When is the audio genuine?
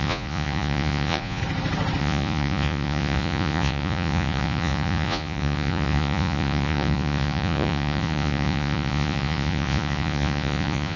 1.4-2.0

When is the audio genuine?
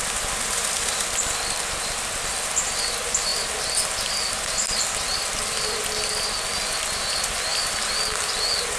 0.0-8.8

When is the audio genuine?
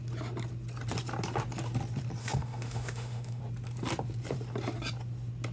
0.0-2.2; 3.4-5.5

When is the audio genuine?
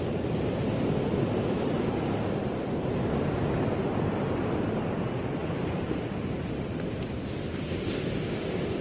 0.0-8.8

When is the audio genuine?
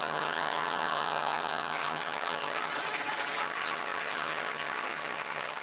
2.7-3.4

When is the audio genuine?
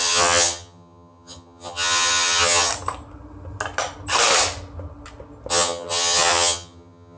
2.7-5.5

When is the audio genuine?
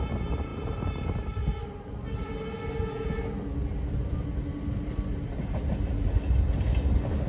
0.0-7.3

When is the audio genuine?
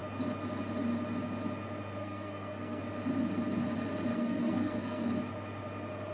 0.0-2.0; 2.8-4.1; 5.1-6.1